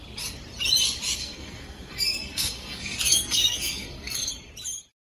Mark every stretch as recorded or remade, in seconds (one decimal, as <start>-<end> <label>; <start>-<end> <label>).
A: 0.0-1.2 recorded; 1.2-4.3 remade; 4.3-5.2 recorded